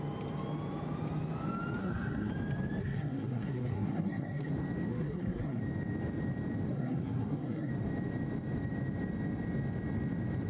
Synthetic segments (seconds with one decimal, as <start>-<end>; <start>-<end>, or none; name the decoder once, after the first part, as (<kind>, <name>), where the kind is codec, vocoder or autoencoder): 1.8-2.3 (codec, SNAC); 2.8-4.5; 4.9-5.6; 6.7-7.7